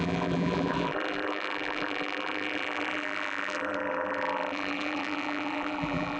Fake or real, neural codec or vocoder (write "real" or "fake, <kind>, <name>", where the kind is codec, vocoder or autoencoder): fake, vocoder, BigVGAN v2